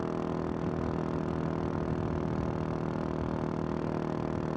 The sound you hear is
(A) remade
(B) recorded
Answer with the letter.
B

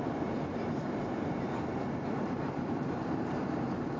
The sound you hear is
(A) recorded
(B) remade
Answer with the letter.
B